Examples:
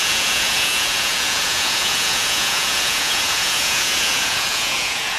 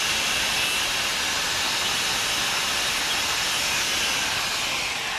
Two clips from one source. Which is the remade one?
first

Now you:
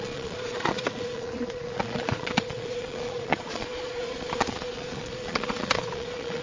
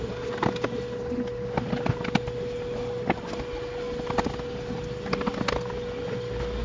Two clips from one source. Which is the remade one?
first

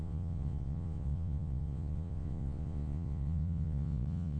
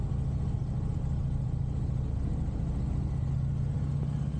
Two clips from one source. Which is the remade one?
first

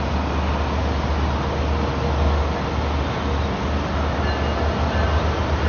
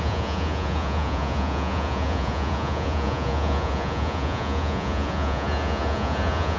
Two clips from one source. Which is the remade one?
second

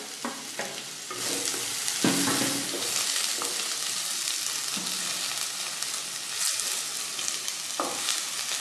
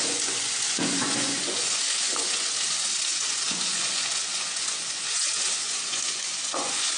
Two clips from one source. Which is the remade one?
second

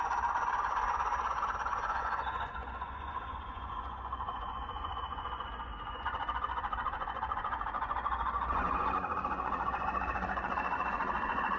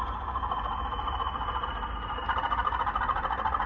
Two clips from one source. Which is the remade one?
first